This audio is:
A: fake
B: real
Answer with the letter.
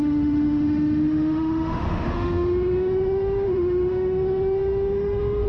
A